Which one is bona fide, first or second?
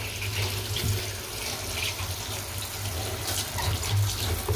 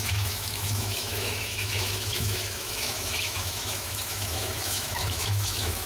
first